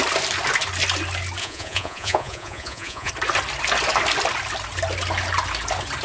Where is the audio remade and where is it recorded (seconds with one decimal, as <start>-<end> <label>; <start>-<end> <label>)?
0.0-1.4 recorded; 1.4-3.1 remade; 3.1-6.0 recorded